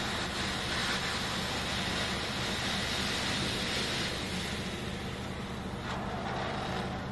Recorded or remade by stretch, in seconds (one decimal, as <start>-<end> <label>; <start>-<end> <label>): 0.0-7.1 recorded